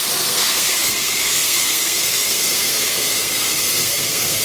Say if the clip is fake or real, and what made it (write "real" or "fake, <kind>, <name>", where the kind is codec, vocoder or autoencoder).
fake, codec, SNAC